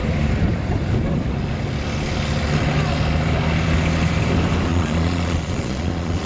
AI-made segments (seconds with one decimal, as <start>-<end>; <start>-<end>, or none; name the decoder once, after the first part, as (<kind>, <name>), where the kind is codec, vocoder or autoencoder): 4.7-6.3 (vocoder, Vocos)